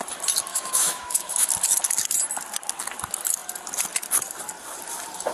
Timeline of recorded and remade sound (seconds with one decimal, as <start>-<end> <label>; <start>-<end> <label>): 0.0-0.5 recorded; 0.5-1.5 remade; 1.5-5.3 recorded